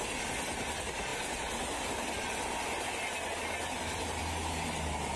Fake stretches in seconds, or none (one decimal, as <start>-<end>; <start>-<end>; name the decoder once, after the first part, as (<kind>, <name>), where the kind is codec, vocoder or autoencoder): none